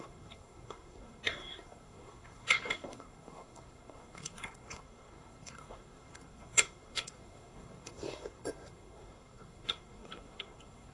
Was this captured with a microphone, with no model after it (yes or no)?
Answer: no